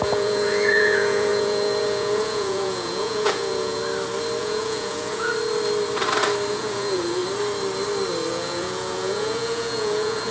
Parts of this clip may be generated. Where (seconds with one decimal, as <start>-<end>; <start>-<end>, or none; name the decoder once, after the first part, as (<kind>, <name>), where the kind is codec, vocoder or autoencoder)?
0.0-3.8 (vocoder, Vocos); 4.4-5.3; 6.5-7.2; 8.3-10.3